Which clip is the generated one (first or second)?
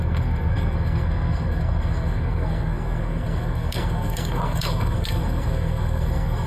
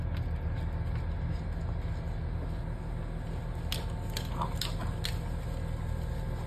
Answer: first